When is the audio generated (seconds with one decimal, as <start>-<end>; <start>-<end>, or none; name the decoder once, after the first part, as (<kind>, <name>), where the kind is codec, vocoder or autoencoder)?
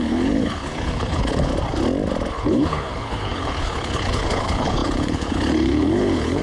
0.0-1.5 (codec, HILCodec); 2.3-6.4